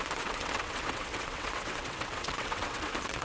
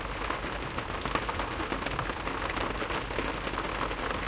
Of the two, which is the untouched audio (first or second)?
second